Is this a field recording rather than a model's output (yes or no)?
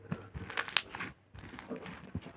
yes